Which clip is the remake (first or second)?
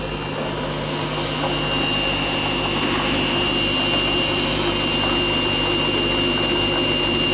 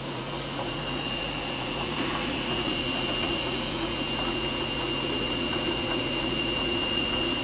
second